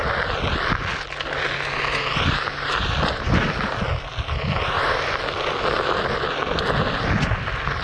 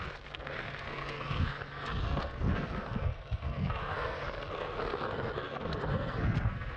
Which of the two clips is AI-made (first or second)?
second